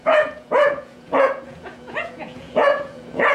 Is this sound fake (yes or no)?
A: yes